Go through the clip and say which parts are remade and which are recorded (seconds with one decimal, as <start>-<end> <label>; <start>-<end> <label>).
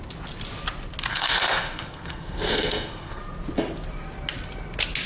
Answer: 0.0-1.1 recorded; 1.1-3.2 remade; 3.2-5.1 recorded